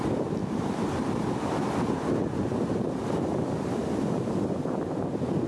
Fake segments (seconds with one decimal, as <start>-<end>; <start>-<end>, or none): none